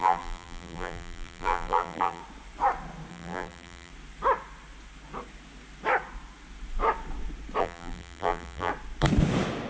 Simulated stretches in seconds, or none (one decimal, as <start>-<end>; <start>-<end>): 0.0-2.2; 3.1-3.9; 7.6-8.7